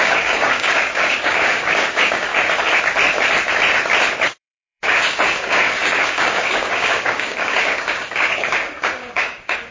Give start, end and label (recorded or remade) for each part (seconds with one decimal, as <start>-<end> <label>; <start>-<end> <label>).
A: 0.0-2.3 remade; 2.3-4.2 recorded; 4.2-9.7 remade